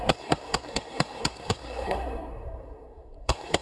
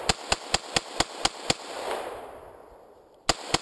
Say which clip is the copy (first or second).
first